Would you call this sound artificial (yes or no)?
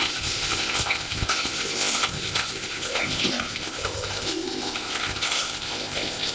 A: yes